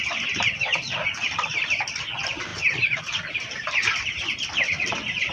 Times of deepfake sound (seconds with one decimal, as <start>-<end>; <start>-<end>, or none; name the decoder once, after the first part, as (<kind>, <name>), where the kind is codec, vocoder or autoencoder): none